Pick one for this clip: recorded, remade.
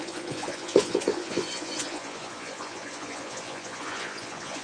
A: remade